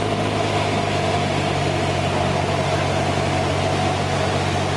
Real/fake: real